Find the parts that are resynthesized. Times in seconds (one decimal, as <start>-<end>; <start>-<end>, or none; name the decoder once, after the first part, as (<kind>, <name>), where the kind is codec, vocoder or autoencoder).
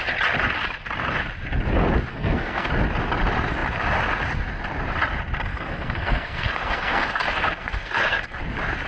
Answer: 2.1-2.7 (codec, SNAC); 5.5-8.4